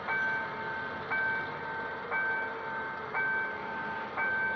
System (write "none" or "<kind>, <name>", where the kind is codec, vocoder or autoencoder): none